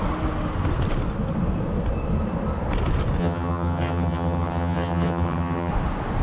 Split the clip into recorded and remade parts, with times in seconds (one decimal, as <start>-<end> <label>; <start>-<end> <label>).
0.0-3.2 recorded; 3.2-5.7 remade; 5.7-6.2 recorded